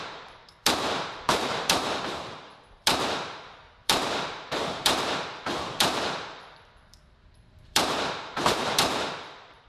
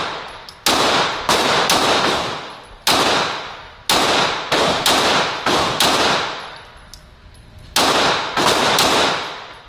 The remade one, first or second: first